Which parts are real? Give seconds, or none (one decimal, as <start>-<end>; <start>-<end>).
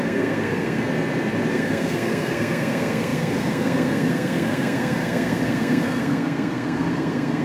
0.9-1.5